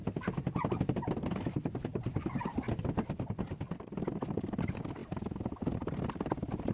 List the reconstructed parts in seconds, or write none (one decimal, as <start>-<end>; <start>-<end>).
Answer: none